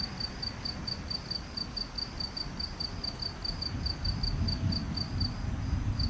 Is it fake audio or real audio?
real